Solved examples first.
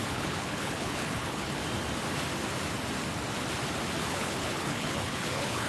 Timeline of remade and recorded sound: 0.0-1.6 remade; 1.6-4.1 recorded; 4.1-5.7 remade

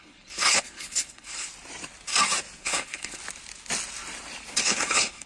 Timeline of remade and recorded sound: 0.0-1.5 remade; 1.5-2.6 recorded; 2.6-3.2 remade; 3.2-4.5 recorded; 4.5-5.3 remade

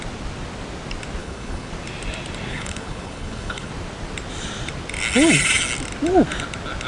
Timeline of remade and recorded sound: 0.0-1.2 recorded; 1.2-1.7 remade; 1.7-2.5 recorded; 2.5-3.7 remade; 3.7-6.9 recorded